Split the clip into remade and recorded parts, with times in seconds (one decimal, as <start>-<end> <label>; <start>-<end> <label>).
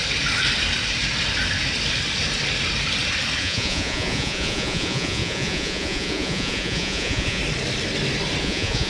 0.0-3.4 recorded; 3.4-7.4 remade; 7.4-8.4 recorded; 8.4-8.9 remade